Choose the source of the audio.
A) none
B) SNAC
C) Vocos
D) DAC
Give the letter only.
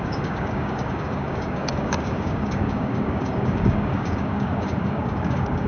D